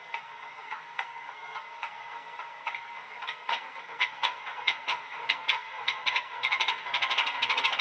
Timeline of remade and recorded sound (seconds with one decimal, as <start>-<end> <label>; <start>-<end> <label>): 0.0-7.8 remade